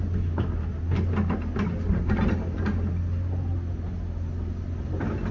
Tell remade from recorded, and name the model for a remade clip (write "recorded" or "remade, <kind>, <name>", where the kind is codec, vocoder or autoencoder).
recorded